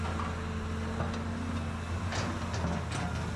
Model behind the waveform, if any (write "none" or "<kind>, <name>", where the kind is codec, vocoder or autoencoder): none